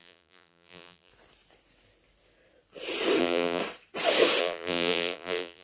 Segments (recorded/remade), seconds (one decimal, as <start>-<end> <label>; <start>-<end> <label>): 0.0-1.1 remade; 1.1-3.2 recorded; 3.2-3.6 remade; 3.6-4.4 recorded; 4.4-5.6 remade